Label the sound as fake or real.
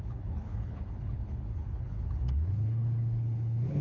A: fake